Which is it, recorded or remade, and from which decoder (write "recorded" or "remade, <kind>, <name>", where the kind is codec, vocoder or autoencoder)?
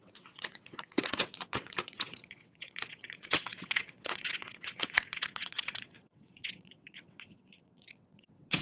remade, vocoder, WaveNeXt